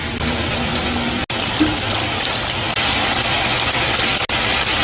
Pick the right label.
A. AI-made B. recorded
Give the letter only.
B